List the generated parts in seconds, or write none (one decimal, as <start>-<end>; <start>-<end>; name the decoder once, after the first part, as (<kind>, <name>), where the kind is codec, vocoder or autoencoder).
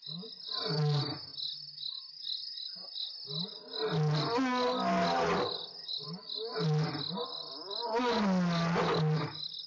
none